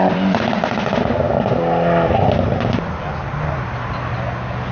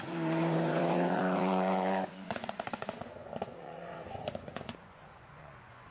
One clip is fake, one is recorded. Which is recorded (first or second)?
first